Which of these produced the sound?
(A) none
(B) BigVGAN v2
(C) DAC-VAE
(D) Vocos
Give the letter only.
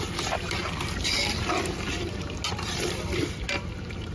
A